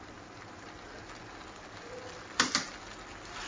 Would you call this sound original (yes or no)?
yes